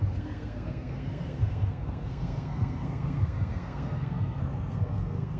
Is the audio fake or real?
fake